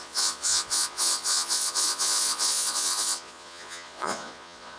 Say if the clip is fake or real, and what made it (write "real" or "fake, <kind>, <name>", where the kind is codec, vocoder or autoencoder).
fake, vocoder, Vocos